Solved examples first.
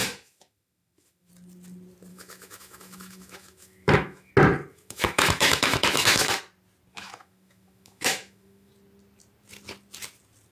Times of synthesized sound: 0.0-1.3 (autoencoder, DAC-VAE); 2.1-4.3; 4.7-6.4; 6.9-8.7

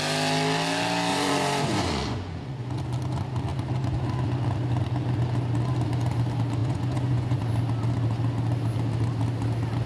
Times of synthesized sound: 1.1-2.8 (vocoder, Vocos); 6.6-7.4

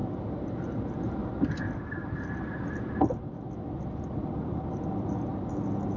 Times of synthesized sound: 0.0-0.5 (vocoder, BigVGAN v2); 1.2-4.8

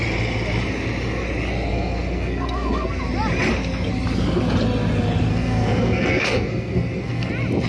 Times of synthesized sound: 1.7-3.0 (codec, SNAC); 5.3-7.3

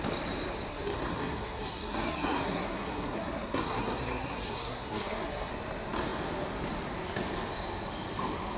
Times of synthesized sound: 0.7-5.5 (codec, SNAC)

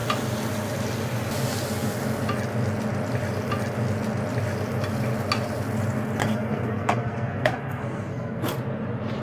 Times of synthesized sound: 6.2-8.4 (codec, SNAC)

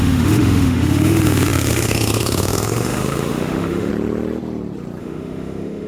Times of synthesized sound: 0.0-3.9 (autoencoder, DAC-VAE); 5.0-5.9

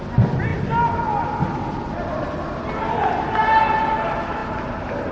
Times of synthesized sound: none